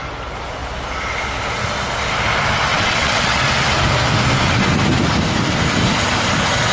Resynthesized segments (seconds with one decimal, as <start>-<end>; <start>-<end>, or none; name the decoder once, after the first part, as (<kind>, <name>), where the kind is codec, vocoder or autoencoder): 2.7-3.4 (vocoder, WaveNeXt)